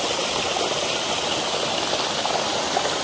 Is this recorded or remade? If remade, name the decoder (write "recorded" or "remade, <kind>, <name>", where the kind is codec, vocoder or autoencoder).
recorded